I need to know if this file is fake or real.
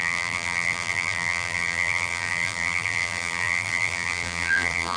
fake